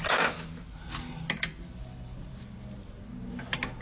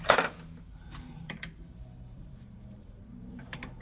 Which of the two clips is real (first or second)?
first